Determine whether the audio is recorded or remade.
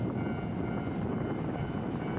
recorded